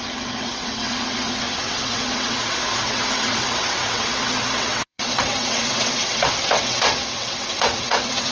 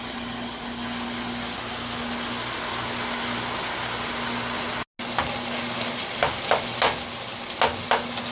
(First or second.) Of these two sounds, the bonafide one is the second